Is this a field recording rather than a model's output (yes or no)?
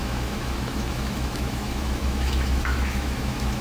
no